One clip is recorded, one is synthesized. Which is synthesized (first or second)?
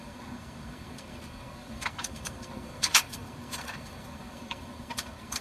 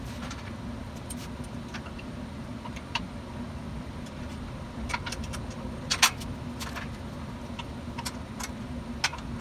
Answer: first